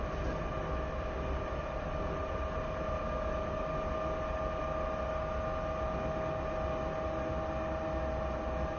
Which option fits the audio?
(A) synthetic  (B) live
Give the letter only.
B